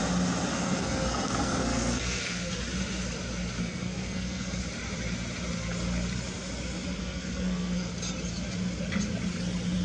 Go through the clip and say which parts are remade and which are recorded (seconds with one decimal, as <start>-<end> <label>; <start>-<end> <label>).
0.0-0.5 recorded; 0.5-2.5 remade; 2.5-3.6 recorded; 3.6-4.6 remade; 4.6-7.0 recorded; 7.0-7.9 remade; 7.9-9.8 recorded